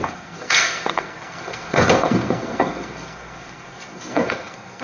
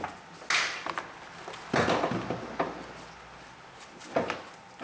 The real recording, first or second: second